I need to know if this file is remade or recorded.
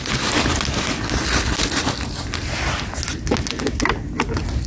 recorded